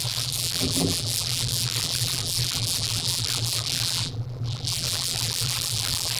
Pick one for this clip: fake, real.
fake